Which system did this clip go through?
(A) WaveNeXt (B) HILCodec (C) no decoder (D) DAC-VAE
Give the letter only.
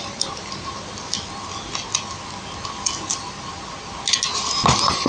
C